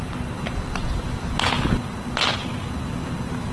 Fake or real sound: real